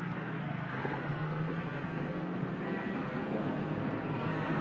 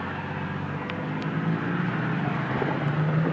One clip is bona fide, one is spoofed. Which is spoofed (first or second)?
first